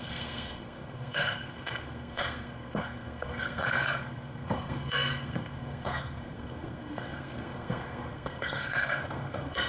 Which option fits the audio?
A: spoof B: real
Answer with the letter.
A